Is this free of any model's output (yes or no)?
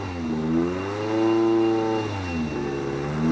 yes